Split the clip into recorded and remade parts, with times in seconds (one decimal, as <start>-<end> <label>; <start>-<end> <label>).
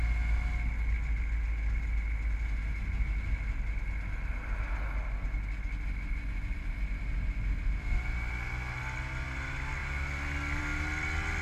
0.0-11.4 recorded